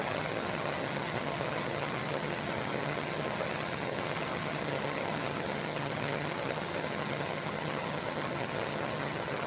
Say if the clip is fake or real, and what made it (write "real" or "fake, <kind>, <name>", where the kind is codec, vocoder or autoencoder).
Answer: fake, vocoder, HiFi-GAN